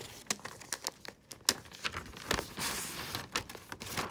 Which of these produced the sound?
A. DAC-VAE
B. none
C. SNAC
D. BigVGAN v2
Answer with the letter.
B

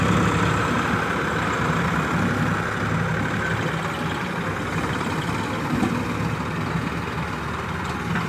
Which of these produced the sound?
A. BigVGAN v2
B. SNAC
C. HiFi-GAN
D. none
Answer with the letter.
D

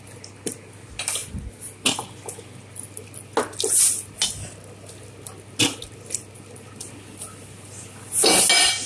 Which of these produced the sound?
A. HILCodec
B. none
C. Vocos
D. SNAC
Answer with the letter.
B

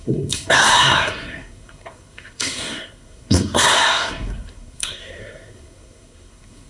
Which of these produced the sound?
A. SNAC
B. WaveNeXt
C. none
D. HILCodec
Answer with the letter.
A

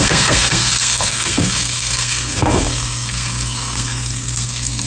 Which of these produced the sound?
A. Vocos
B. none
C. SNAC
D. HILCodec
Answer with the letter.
C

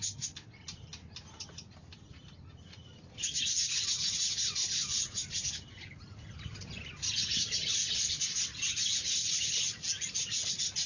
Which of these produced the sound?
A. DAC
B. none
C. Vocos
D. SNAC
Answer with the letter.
B